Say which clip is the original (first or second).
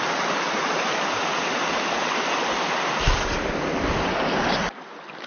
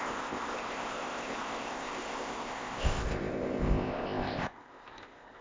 first